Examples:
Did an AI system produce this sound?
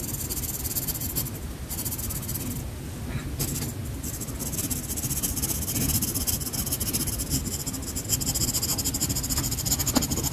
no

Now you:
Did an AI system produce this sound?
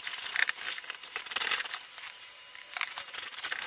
yes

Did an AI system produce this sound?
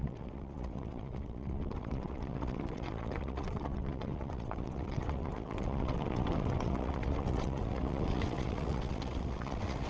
yes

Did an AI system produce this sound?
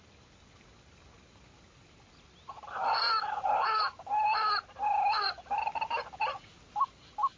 no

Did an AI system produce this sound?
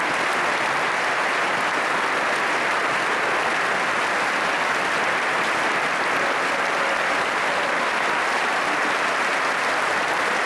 no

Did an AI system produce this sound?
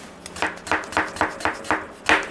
no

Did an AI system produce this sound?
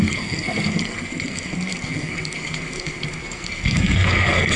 yes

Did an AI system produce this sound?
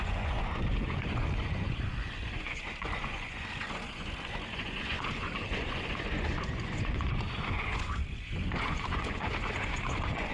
yes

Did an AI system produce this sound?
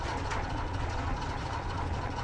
yes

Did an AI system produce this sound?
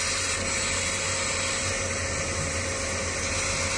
no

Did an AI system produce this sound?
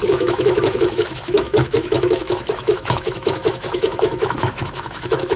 yes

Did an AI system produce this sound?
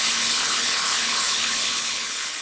yes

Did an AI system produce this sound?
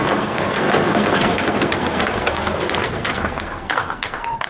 yes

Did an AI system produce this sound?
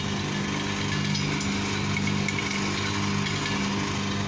no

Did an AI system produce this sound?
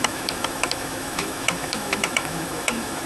yes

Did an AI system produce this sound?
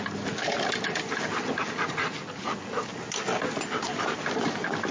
no